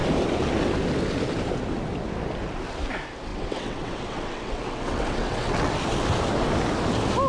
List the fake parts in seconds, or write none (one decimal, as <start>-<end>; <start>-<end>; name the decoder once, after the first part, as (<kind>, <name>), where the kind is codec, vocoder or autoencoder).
3.3-5.7 (vocoder, WaveNeXt)